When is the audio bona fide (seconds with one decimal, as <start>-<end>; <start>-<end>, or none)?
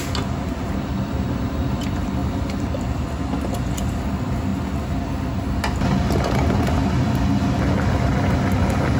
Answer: 0.0-9.0